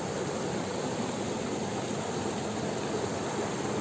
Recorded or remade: recorded